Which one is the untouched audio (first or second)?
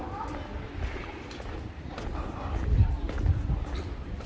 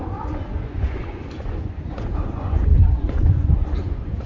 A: first